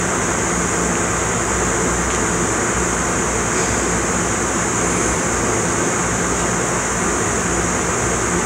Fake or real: real